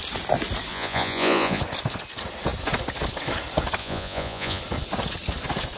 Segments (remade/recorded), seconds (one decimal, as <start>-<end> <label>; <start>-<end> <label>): 0.0-0.7 recorded; 0.7-1.6 remade; 1.6-3.8 recorded; 3.8-4.6 remade; 4.6-5.8 recorded

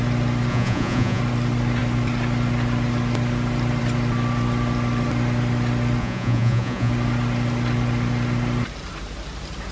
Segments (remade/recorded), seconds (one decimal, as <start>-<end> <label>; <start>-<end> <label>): 0.0-0.5 recorded; 0.5-1.2 remade; 1.2-6.0 recorded; 6.0-6.9 remade; 6.9-9.7 recorded

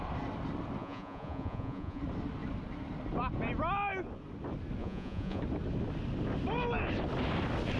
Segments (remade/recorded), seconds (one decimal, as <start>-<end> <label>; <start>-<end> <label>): 0.0-0.8 recorded; 0.8-2.0 remade; 2.0-4.8 recorded; 4.8-5.4 remade; 5.4-7.8 recorded

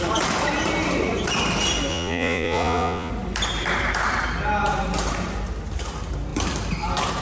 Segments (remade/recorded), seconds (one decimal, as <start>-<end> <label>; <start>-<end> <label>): 0.0-1.9 recorded; 1.9-3.1 remade; 3.1-7.2 recorded

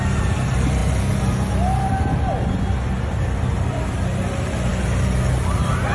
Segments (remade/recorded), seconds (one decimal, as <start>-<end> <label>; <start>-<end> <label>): 0.0-5.9 recorded

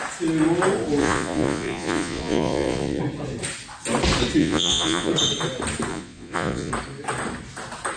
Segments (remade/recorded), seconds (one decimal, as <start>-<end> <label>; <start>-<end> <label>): 0.0-1.0 recorded; 1.0-3.0 remade; 3.0-4.4 recorded; 4.4-5.1 remade; 5.1-5.9 recorded; 5.9-6.7 remade; 6.7-8.0 recorded

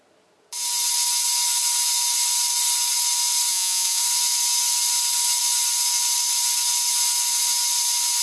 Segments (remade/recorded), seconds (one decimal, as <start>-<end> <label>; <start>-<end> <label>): 0.0-3.5 recorded; 3.5-4.0 remade; 4.0-8.2 recorded

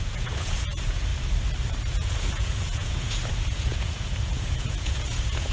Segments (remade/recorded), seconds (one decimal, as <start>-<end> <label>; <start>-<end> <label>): 0.0-1.1 remade; 1.1-1.9 recorded; 1.9-5.5 remade